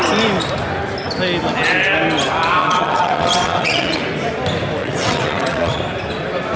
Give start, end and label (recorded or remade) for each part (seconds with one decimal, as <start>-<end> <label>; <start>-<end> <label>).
0.0-2.6 recorded; 2.6-4.0 remade; 4.0-4.8 recorded; 4.8-5.8 remade; 5.8-6.6 recorded